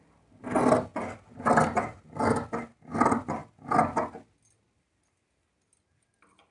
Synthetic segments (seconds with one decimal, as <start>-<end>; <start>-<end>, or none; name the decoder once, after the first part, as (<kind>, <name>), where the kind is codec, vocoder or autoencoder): 0.0-0.9 (vocoder, BigVGAN v2); 2.6-3.4; 5.9-6.5